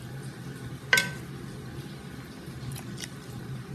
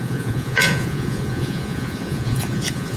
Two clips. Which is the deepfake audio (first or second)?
second